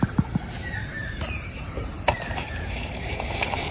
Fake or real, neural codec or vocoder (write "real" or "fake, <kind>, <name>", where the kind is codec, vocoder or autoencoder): fake, vocoder, BigVGAN v2